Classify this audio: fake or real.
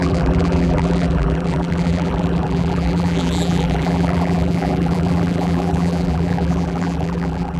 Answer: fake